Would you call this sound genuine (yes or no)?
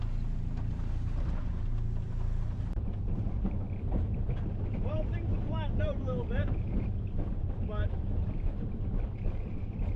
no